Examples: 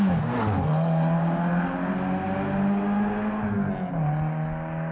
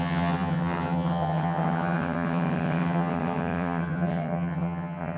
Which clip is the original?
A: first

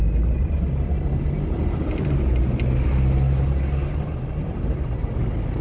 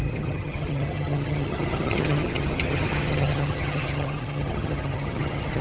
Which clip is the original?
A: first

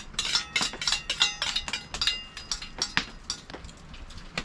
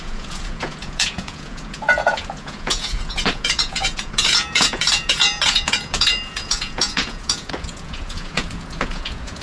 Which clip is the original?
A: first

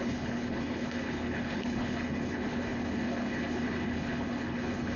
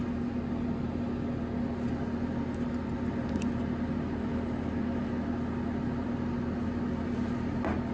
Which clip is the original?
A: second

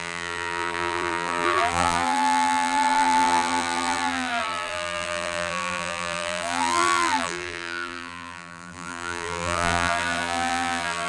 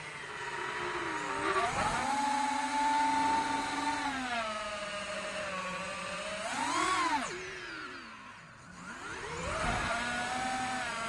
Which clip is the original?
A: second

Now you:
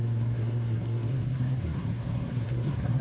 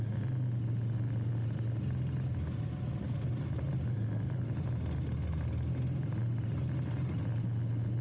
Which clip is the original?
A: second